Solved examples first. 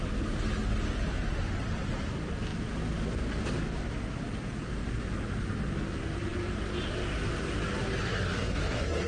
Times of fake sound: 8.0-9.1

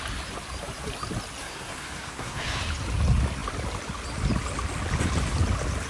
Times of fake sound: 1.4-2.6

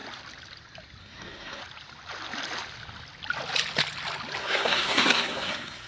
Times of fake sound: 1.0-1.6; 4.4-5.9

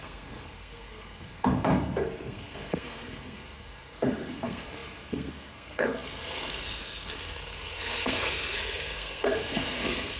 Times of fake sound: 0.0-10.2

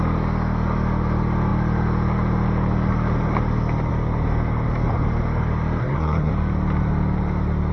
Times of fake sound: 5.8-6.3

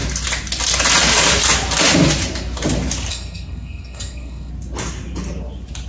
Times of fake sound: 3.1-4.5

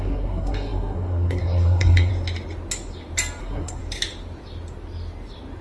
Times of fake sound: 0.0-2.1; 3.4-3.8